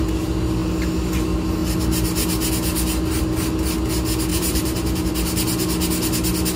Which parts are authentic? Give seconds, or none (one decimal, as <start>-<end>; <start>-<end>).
0.0-4.3; 5.1-6.6